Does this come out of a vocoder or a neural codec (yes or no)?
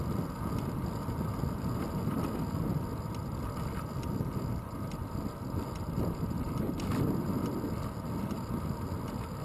no